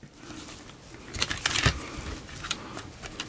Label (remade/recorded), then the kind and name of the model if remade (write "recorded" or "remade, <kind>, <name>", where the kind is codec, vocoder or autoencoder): recorded